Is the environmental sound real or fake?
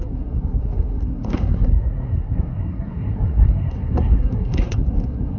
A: fake